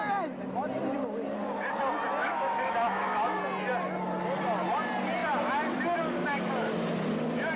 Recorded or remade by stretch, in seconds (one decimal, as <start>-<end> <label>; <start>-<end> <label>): 0.0-2.2 recorded; 2.2-3.4 remade; 3.4-7.6 recorded